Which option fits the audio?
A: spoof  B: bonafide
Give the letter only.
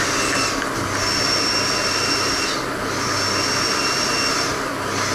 B